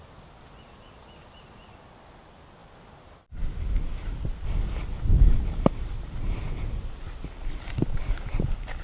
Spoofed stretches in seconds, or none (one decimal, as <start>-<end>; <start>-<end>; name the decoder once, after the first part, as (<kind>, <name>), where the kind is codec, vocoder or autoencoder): none